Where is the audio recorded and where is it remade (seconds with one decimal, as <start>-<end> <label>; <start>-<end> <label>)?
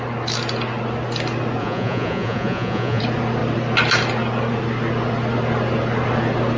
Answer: 0.0-1.6 recorded; 1.6-3.0 remade; 3.0-6.6 recorded